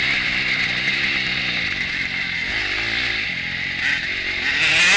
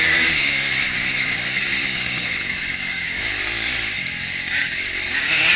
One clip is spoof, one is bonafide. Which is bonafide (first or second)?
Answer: first